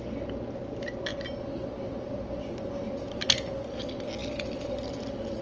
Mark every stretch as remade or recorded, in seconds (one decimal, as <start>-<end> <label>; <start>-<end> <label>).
0.0-4.2 recorded; 4.2-4.9 remade; 4.9-5.4 recorded

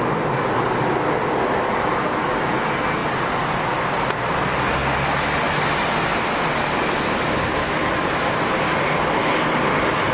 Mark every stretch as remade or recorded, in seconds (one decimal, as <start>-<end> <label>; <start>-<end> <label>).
0.0-10.1 recorded

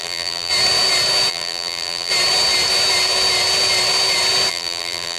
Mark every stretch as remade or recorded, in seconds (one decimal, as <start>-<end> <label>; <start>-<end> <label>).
0.0-0.5 remade; 0.5-1.3 recorded; 1.3-2.1 remade; 2.1-4.5 recorded; 4.5-5.2 remade

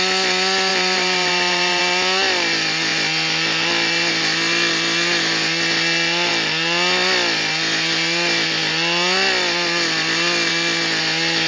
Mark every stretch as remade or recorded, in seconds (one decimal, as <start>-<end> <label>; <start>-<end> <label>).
0.0-0.7 recorded; 0.7-1.8 remade; 1.8-11.5 recorded

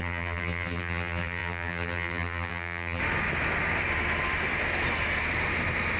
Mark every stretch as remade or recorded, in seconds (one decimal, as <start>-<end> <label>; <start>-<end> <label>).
0.0-3.0 remade; 3.0-6.0 recorded

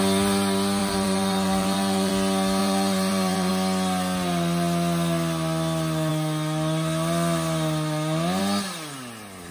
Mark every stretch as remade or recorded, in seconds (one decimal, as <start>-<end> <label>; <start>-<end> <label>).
0.0-0.8 recorded; 0.8-2.1 remade; 2.1-2.6 recorded; 2.6-3.5 remade; 3.5-9.5 recorded

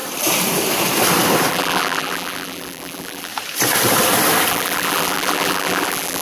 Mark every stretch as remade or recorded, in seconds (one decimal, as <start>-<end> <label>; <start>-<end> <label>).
0.0-1.5 recorded; 1.5-3.3 remade; 3.3-4.5 recorded; 4.5-6.2 remade